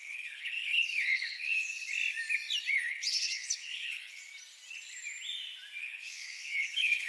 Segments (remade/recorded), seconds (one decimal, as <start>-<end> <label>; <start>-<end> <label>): 0.0-2.0 remade; 2.0-2.7 recorded; 2.7-4.2 remade; 4.2-5.8 recorded; 5.8-7.1 remade